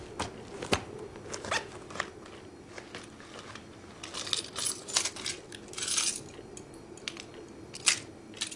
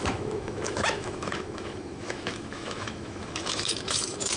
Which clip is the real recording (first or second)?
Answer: first